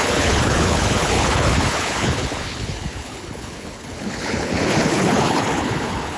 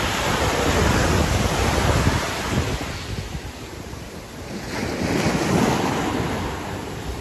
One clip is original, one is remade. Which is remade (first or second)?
first